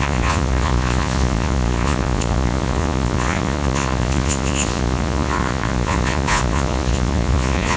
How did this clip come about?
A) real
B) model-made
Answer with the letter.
B